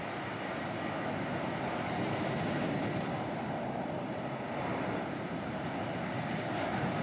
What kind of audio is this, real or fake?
fake